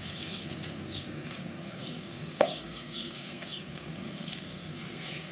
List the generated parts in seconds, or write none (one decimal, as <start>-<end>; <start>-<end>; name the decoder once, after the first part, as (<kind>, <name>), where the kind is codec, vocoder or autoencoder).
0.0-5.3 (codec, SNAC)